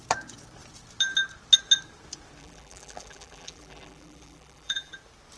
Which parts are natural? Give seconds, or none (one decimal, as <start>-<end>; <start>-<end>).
0.0-2.4; 4.9-5.4